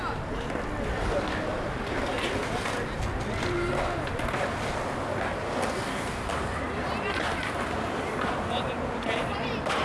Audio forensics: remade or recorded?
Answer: recorded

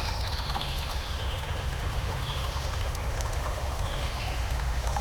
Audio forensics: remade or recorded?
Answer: remade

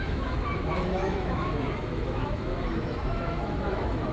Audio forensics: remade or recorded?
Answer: remade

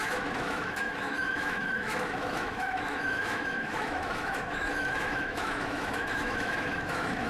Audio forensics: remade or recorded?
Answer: remade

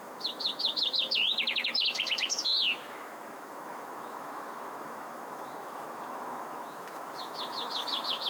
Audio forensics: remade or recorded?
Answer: remade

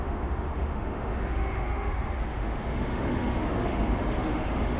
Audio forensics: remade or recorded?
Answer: remade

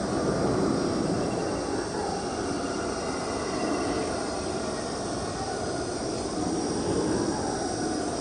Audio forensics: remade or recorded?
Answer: recorded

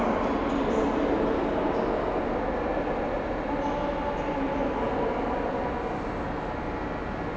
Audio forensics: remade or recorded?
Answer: recorded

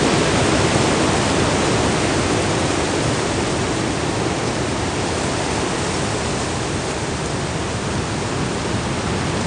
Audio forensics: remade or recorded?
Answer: recorded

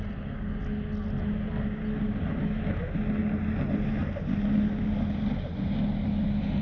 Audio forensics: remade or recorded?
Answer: recorded